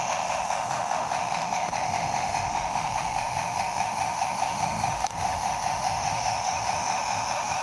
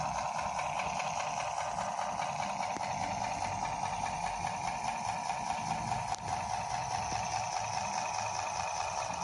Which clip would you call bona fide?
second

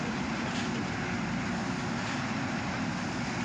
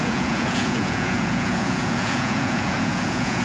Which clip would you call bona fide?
first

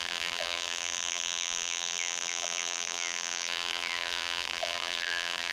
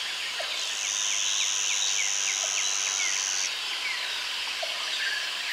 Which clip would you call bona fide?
second